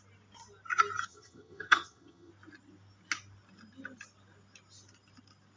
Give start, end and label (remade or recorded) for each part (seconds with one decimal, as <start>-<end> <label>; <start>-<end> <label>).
0.0-1.1 recorded; 1.1-2.3 remade; 2.3-5.6 recorded